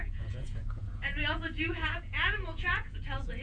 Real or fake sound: fake